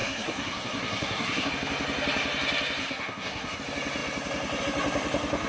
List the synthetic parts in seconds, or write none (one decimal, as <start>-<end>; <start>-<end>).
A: 0.0-1.5; 2.8-3.6